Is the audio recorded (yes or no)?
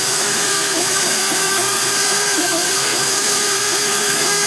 no